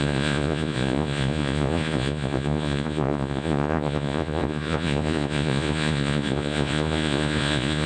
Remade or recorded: remade